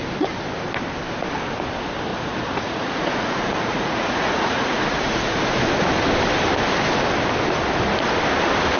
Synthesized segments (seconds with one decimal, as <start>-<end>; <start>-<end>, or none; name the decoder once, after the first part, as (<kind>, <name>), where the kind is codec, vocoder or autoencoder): 2.1-5.4 (vocoder, Vocos)